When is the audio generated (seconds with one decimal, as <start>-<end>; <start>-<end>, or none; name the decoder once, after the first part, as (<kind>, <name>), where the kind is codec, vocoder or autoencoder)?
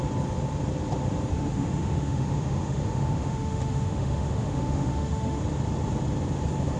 1.3-5.4 (autoencoder, DAC-VAE)